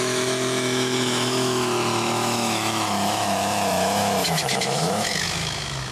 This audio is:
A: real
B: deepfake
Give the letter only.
B